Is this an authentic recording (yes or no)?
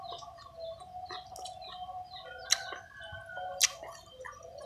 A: yes